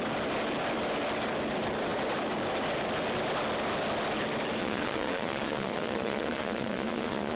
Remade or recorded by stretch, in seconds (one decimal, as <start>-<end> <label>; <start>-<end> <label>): 0.0-4.6 recorded; 4.6-7.4 remade